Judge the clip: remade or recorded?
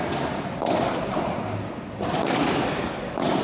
recorded